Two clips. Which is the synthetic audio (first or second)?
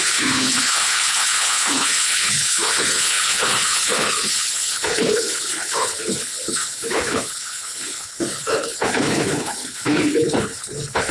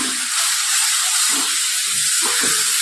first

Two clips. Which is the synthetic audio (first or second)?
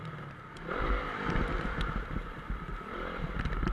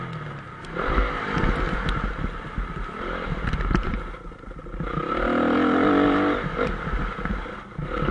first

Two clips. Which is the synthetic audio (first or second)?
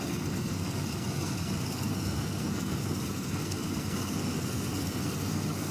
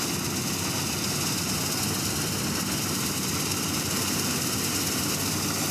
first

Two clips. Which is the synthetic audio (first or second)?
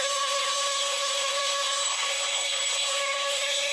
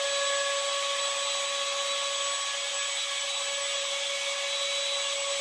first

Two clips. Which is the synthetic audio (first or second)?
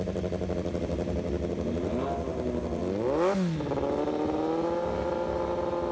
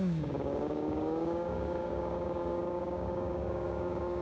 second